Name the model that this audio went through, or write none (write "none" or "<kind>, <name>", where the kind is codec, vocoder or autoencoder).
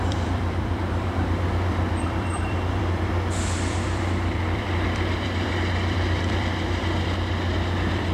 vocoder, BigVGAN v2